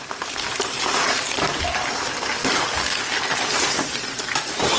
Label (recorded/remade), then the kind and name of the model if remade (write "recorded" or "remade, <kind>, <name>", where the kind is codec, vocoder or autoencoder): remade, vocoder, BigVGAN v2